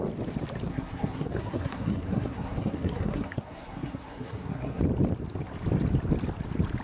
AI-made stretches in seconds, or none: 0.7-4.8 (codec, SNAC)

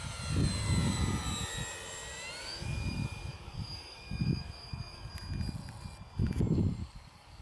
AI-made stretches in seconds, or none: 2.4-5.1 (codec, DAC); 6.8-7.4

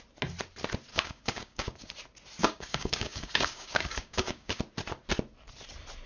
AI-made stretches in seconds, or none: 0.9-1.9 (codec, DAC); 2.4-4.6

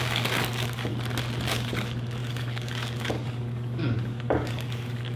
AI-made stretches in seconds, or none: 0.0-0.9 (codec, DAC); 1.5-5.2

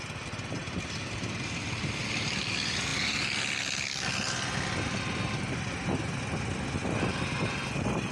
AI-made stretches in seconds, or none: none

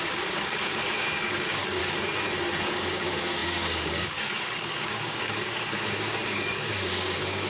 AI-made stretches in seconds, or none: 0.0-1.8 (codec, DAC); 2.6-7.5

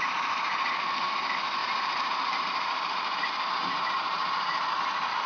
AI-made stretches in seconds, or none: 1.6-4.8 (vocoder, BigVGAN v2)

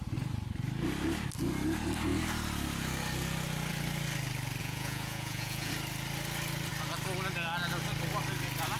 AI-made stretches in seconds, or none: 4.6-5.7 (vocoder, Vocos)